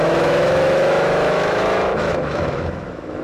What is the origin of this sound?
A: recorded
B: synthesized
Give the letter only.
B